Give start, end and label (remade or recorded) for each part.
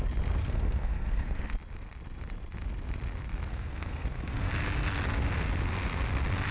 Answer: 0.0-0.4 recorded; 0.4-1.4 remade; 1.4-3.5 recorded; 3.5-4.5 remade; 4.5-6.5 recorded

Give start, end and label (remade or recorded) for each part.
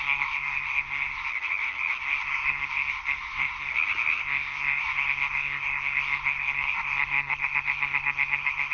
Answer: 0.0-1.3 remade; 1.3-2.0 recorded; 2.0-3.7 remade; 3.7-4.2 recorded; 4.2-8.7 remade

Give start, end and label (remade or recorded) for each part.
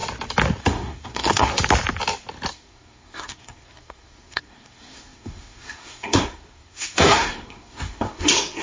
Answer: 0.0-0.6 recorded; 0.6-1.5 remade; 1.5-2.5 recorded; 2.5-8.6 remade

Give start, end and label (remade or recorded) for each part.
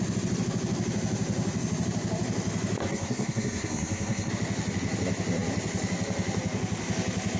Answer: 0.0-2.8 recorded; 2.8-4.3 remade; 4.3-7.4 recorded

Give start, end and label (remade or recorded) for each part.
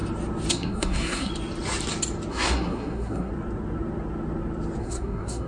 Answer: 0.0-0.5 recorded; 0.5-1.3 remade; 1.3-2.3 recorded; 2.3-3.3 remade; 3.3-4.8 recorded; 4.8-5.5 remade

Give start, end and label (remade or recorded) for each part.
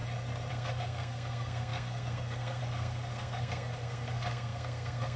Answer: 0.0-0.5 recorded; 0.5-5.2 remade